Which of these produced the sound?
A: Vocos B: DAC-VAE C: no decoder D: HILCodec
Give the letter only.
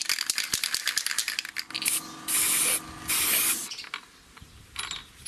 C